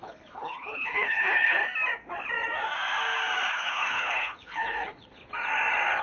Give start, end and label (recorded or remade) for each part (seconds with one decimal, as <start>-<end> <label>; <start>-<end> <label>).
0.0-1.6 remade; 1.6-3.5 recorded; 3.5-5.2 remade; 5.2-6.0 recorded

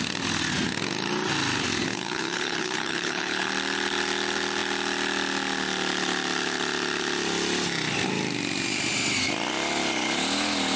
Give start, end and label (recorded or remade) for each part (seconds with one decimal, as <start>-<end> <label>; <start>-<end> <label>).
0.0-1.9 recorded; 1.9-3.5 remade; 3.5-10.8 recorded

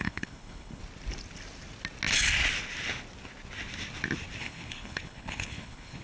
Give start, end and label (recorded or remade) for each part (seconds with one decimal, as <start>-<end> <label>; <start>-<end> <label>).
0.0-0.8 remade; 0.8-4.4 recorded; 4.4-6.0 remade

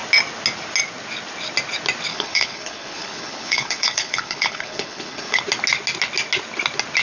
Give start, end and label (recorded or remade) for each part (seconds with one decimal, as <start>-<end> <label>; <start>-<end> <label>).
0.0-2.1 recorded; 2.1-5.4 remade; 5.4-7.0 recorded

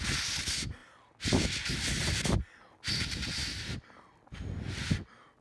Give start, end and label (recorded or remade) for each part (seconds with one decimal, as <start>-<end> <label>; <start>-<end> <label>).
0.0-5.4 recorded

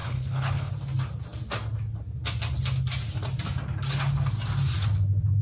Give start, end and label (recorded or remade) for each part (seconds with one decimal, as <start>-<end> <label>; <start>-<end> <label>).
0.0-0.7 remade; 0.7-5.4 recorded